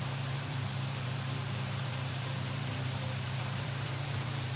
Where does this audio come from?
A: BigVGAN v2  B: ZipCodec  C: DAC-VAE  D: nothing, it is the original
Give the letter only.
A